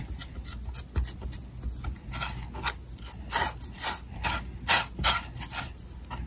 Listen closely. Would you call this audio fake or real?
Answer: real